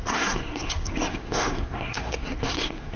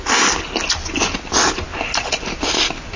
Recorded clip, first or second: second